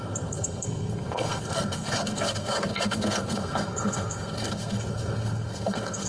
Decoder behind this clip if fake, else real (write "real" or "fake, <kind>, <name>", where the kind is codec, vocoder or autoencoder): fake, codec, SNAC